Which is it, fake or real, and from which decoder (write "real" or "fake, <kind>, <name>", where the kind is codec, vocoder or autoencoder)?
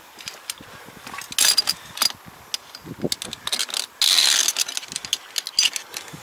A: real